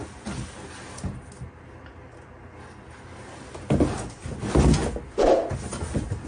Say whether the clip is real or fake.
real